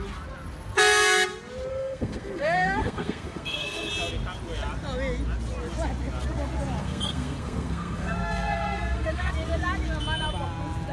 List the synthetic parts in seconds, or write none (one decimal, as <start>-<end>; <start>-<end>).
1.7-3.9; 6.8-9.3